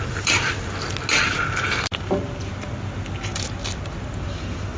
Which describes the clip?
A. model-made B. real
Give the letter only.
B